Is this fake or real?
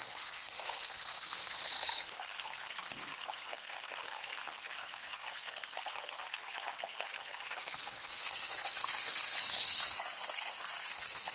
fake